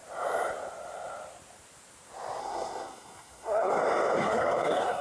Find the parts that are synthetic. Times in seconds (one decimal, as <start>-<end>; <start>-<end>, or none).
2.4-3.7; 4.2-5.0